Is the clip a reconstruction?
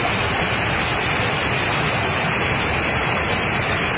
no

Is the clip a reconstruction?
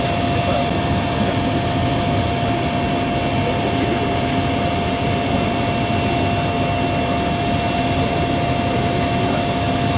no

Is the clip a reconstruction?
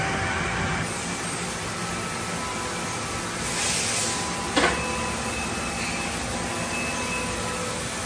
no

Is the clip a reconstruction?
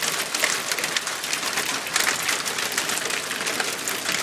no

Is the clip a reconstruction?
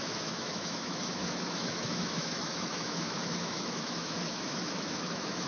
yes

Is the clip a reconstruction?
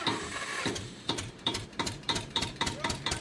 yes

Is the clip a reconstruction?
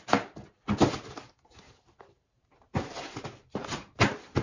no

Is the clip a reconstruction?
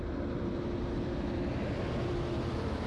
no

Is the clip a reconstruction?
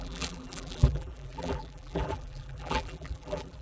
yes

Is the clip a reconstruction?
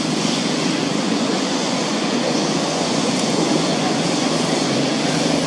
yes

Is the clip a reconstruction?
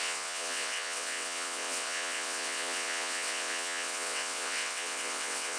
yes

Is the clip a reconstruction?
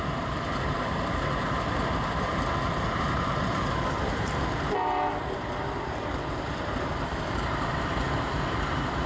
yes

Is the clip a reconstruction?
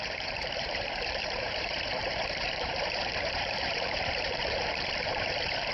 yes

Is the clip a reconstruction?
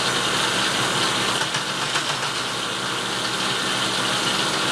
no